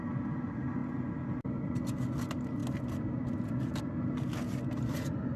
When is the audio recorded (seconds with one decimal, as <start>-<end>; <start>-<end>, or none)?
0.0-5.4